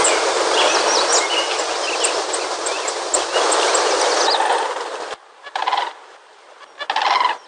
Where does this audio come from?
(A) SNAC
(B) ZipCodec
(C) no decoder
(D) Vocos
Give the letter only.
C